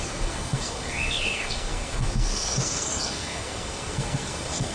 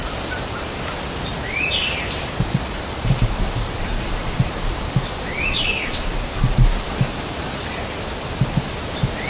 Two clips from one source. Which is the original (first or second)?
second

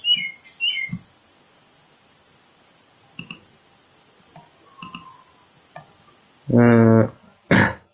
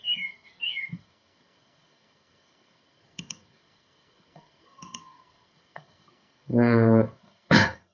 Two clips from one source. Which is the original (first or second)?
first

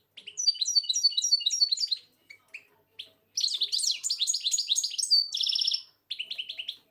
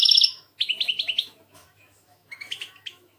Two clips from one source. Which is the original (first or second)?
first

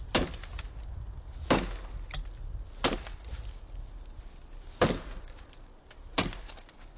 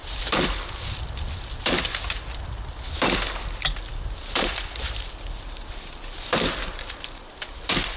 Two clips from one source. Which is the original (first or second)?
first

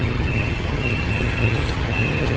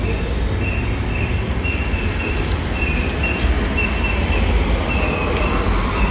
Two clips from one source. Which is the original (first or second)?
second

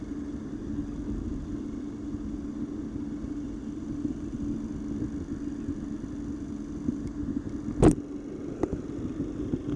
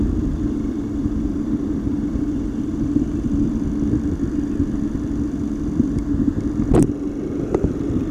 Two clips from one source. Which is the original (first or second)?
first